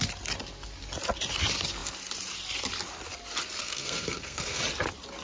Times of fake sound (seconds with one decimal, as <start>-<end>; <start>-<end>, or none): 3.6-4.6